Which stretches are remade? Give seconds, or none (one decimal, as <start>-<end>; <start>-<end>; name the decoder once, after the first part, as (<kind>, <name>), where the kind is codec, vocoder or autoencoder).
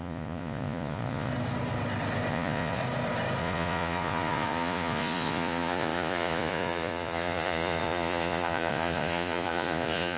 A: 0.0-1.3 (vocoder, Vocos); 2.3-2.8; 3.4-10.2